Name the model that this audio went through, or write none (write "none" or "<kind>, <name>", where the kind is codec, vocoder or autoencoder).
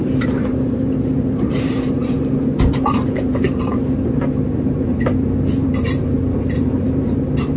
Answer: vocoder, BigVGAN v2